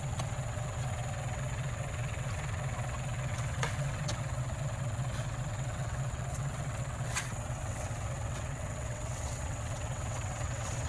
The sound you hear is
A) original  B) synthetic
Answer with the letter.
B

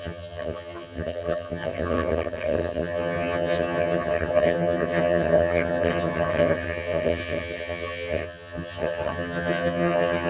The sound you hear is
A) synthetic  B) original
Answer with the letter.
A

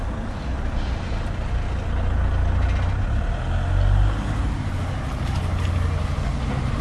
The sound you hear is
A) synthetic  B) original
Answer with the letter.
B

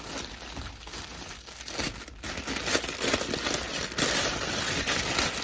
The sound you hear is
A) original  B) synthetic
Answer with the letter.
A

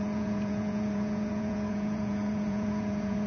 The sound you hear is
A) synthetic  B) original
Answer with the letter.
A